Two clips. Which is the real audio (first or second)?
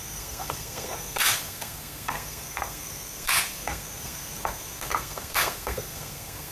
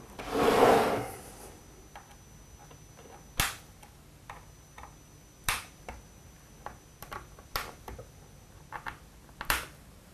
second